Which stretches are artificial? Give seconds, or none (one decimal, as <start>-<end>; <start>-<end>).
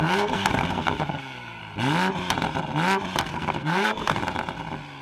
0.0-1.6; 3.2-4.2